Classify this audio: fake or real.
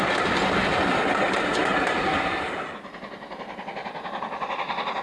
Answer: real